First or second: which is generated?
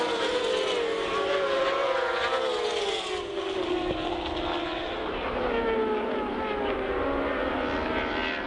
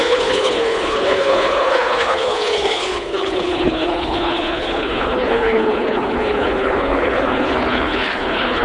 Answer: second